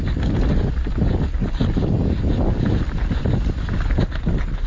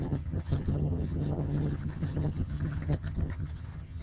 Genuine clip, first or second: first